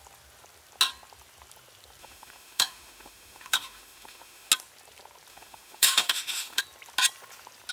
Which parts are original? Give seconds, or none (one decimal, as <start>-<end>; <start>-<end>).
0.0-2.0; 4.5-5.3; 6.6-7.7